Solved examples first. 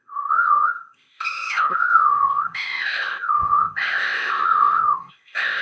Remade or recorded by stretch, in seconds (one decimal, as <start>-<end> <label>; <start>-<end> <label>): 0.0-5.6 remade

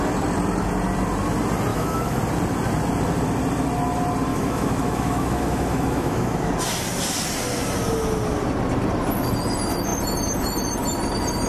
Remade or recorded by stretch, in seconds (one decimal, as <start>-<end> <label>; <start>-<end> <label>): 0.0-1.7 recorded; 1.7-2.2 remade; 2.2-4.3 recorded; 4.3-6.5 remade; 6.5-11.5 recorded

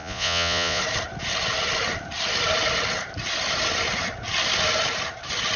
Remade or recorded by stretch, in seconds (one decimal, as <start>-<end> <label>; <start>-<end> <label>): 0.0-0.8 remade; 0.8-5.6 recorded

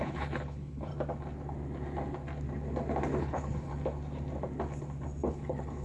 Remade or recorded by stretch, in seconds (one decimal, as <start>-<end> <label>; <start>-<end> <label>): 0.0-0.9 remade; 0.9-3.2 recorded; 3.2-3.7 remade; 3.7-5.3 recorded; 5.3-5.8 remade

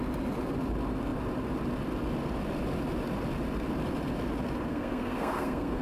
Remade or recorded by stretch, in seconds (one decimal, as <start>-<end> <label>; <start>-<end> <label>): 0.0-4.7 recorded; 4.7-5.8 remade

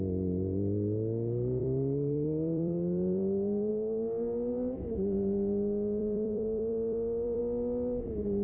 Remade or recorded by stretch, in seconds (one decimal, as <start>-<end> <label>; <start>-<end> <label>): 0.0-1.6 recorded; 1.6-3.7 remade; 3.7-6.0 recorded; 6.0-7.4 remade; 7.4-8.4 recorded